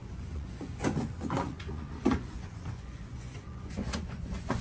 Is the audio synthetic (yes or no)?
yes